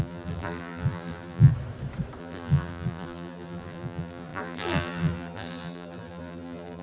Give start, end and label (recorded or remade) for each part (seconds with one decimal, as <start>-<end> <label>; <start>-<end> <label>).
0.0-1.5 remade; 1.5-2.2 recorded; 2.2-6.8 remade